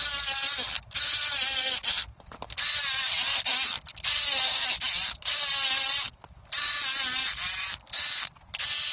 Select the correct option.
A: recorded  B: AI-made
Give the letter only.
A